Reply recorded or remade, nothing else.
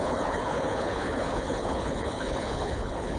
remade